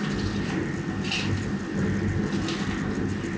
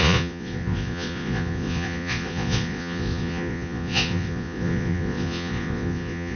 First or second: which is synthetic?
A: second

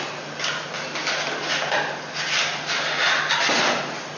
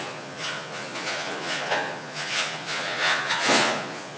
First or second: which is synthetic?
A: second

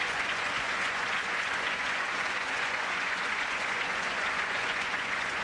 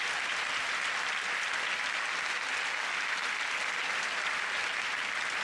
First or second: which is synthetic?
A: first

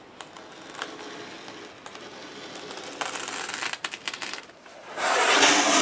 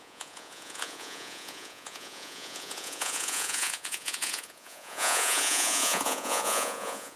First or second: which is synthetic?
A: second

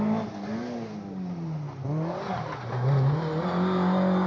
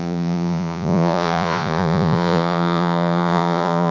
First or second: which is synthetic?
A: second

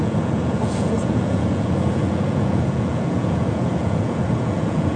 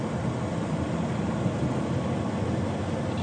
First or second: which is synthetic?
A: first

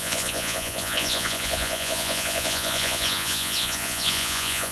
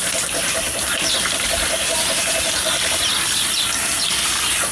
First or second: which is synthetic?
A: first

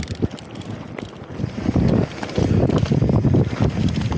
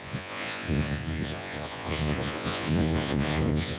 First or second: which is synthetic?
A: second